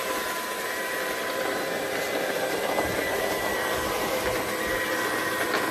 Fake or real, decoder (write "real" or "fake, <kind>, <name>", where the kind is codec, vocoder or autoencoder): real